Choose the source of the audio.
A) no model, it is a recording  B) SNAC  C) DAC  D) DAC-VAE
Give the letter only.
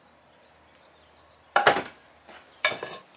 A